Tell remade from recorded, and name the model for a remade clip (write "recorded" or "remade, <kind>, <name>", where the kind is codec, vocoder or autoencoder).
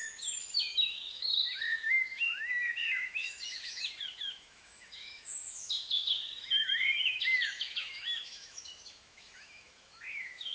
remade, autoencoder, DAC-VAE